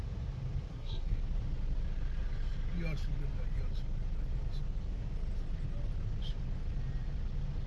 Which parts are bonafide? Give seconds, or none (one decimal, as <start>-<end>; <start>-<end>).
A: 0.0-0.7; 1.2-7.7